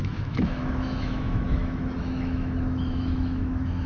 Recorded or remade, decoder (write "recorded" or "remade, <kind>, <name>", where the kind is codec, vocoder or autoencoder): remade, autoencoder, DAC-VAE